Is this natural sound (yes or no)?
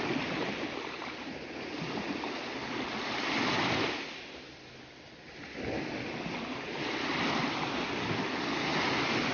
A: yes